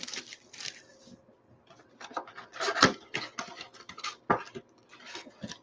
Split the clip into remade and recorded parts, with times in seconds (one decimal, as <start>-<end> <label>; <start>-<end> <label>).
0.0-5.6 recorded

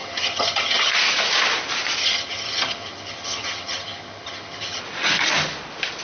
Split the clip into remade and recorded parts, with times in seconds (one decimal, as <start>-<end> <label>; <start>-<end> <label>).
0.0-0.9 remade; 0.9-2.0 recorded; 2.0-4.8 remade; 4.8-6.0 recorded

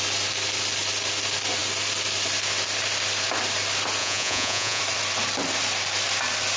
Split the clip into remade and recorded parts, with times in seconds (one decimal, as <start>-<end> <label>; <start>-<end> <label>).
0.0-4.0 recorded; 4.0-4.8 remade; 4.8-6.6 recorded

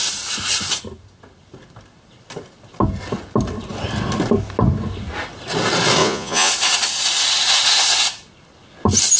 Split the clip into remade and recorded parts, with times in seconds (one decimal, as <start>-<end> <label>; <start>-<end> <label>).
0.0-6.0 recorded; 6.0-6.5 remade; 6.5-9.2 recorded

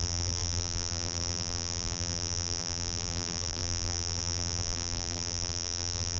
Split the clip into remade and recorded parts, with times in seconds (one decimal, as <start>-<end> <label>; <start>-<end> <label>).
0.0-6.2 remade